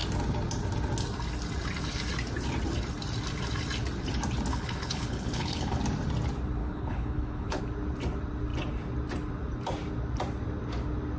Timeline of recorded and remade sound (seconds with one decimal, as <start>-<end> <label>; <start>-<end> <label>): 0.0-4.5 recorded; 4.5-5.8 remade; 5.8-6.6 recorded; 6.6-7.6 remade; 7.6-11.2 recorded